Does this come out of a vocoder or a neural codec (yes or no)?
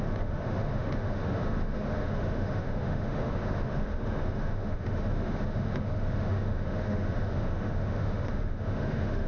yes